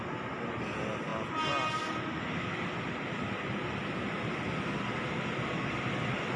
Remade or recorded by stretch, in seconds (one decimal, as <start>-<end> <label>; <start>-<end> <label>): 0.0-6.4 recorded